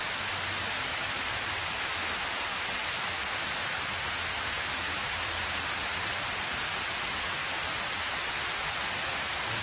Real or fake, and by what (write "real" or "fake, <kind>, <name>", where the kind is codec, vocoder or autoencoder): real